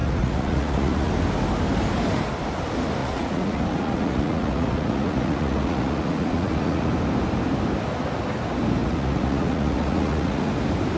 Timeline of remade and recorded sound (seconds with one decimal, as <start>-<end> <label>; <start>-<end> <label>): 0.0-1.1 remade; 1.1-3.0 recorded; 3.0-6.9 remade; 6.9-8.8 recorded; 8.8-10.5 remade; 10.5-11.0 recorded